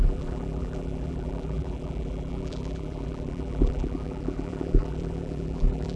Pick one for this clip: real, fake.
fake